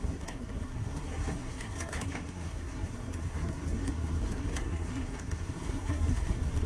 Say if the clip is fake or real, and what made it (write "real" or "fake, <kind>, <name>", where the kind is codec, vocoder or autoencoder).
fake, codec, SNAC